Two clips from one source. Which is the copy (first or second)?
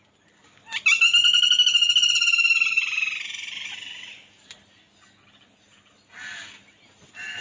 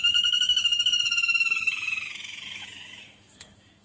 second